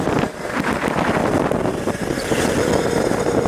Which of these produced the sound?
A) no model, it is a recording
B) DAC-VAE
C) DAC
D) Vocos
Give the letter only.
A